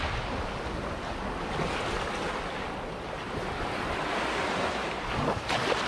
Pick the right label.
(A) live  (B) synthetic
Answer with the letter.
A